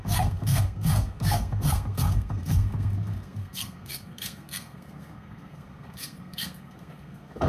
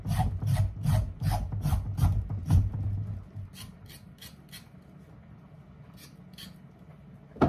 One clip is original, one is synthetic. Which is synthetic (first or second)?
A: first